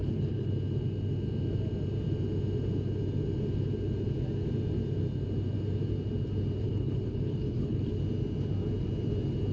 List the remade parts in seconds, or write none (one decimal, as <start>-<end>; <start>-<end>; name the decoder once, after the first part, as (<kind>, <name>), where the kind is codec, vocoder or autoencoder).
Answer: 0.0-0.5 (codec, HILCodec); 6.6-8.0